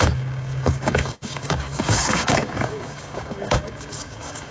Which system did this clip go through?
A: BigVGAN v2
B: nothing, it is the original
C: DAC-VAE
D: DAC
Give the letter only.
D